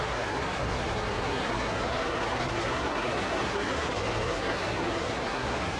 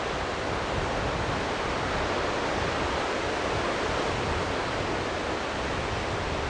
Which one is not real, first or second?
first